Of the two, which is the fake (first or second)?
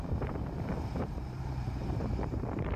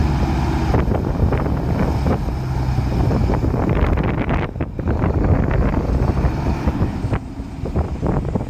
first